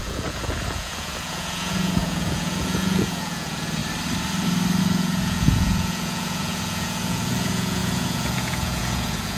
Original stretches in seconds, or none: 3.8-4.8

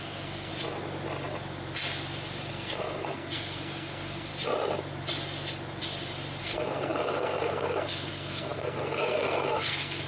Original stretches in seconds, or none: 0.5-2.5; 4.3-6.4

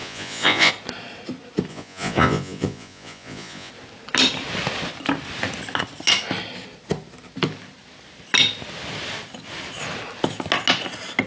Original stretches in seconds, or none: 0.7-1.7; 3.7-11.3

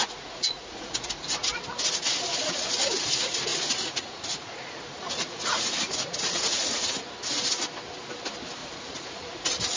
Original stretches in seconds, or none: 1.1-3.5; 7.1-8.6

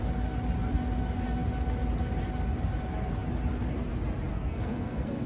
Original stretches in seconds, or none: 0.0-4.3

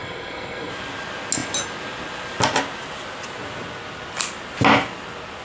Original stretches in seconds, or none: 0.7-5.4

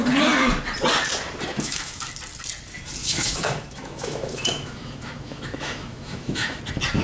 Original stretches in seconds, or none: 0.0-1.5; 2.0-3.0; 6.6-7.0